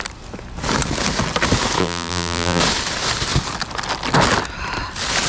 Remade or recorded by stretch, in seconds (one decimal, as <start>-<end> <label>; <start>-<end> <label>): 0.0-1.8 recorded; 1.8-2.6 remade; 2.6-5.3 recorded